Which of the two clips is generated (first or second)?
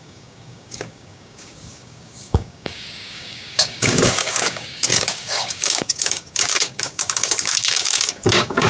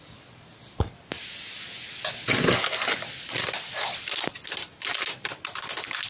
first